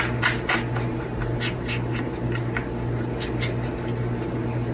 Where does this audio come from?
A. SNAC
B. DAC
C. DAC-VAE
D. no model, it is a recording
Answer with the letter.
D